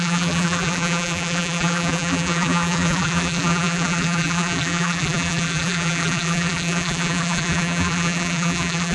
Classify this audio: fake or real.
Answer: fake